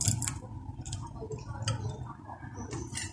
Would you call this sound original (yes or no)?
yes